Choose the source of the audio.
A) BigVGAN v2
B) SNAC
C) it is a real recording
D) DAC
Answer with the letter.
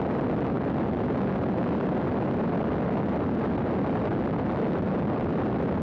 C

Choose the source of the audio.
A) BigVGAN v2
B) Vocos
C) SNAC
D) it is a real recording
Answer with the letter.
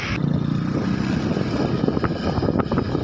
D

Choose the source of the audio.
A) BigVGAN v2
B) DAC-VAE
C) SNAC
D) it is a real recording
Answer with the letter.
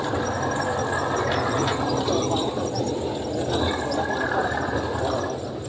D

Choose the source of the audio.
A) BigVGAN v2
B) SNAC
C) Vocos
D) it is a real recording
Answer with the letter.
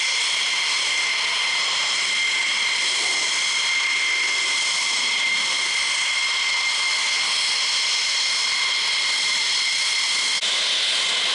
D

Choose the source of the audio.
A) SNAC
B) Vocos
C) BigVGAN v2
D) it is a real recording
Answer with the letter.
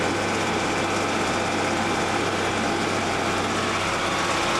D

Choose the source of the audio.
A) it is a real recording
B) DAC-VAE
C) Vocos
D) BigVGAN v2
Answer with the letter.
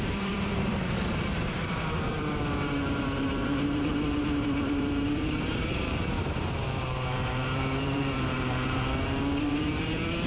D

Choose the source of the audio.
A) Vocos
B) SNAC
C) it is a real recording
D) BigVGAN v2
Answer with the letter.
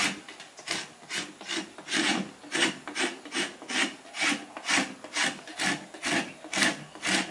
C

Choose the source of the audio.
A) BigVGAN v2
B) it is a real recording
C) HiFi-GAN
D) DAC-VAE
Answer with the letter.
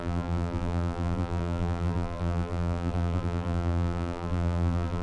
A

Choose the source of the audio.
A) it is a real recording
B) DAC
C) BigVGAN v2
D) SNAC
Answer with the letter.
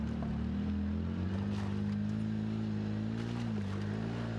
A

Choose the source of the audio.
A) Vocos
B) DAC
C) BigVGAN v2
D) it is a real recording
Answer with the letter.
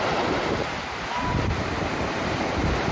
C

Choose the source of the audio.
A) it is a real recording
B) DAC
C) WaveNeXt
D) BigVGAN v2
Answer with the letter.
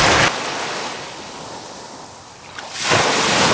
A